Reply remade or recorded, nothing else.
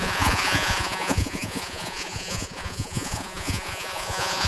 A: remade